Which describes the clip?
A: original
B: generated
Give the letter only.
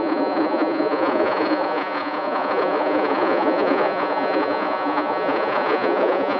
B